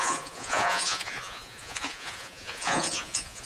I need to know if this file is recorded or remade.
remade